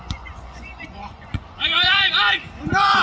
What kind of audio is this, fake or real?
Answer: fake